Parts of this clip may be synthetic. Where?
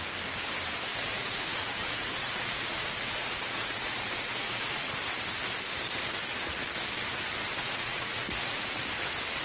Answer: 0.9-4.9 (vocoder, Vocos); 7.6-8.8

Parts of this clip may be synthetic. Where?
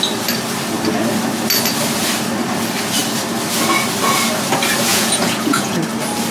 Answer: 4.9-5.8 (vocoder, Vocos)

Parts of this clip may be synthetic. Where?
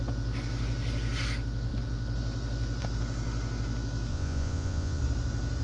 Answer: 4.1-5.0 (vocoder, Vocos)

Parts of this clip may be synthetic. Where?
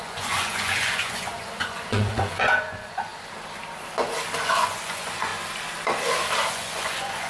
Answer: 0.0-3.1 (vocoder, Vocos); 4.4-5.3; 6.5-7.3